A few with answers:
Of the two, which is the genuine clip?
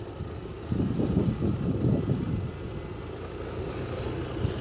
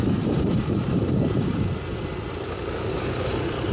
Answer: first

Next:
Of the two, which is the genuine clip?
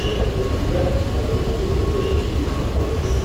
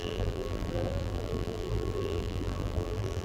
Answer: first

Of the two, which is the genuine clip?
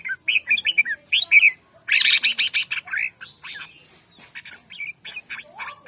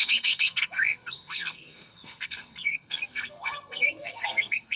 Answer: first